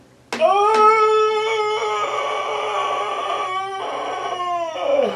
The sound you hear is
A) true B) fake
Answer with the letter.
A